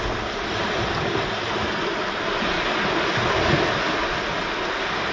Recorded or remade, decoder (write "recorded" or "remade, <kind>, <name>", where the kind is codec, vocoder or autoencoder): recorded